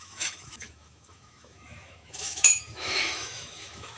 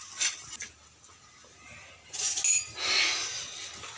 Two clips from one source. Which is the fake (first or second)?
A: first